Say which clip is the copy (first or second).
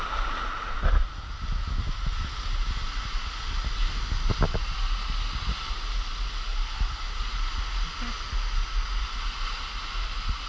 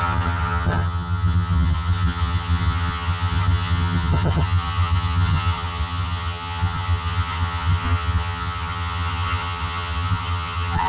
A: second